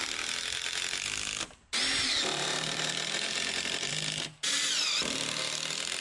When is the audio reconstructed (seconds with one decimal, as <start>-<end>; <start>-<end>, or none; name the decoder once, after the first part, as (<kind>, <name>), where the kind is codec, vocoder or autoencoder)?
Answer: 2.5-3.9 (vocoder, BigVGAN v2)